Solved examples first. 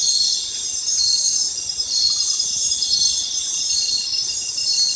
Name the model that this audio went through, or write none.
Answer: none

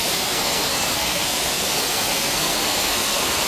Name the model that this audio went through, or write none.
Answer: codec, SNAC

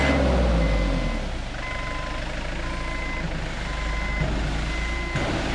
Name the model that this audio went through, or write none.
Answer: none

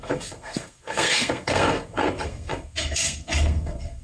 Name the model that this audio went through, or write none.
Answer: codec, SNAC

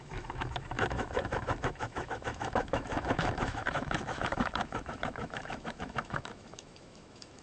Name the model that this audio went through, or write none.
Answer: autoencoder, DAC-VAE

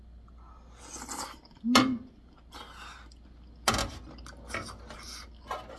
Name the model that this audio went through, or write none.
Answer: none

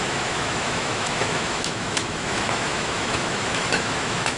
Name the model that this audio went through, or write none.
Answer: autoencoder, DAC-VAE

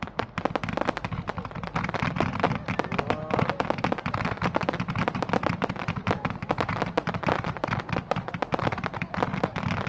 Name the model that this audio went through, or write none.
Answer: none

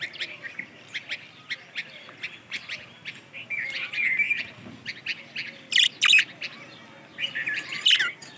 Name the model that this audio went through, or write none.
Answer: none